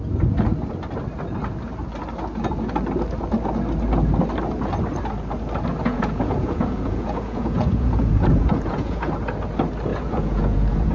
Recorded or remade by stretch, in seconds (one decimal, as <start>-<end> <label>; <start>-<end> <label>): 0.0-5.8 recorded; 5.8-9.1 remade; 9.1-9.9 recorded; 9.9-10.9 remade